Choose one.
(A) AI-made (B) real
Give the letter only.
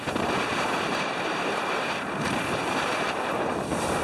A